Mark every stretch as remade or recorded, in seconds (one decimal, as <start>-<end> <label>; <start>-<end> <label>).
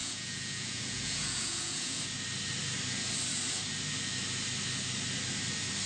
0.0-2.0 remade; 2.0-5.9 recorded